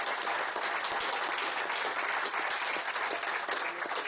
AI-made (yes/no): no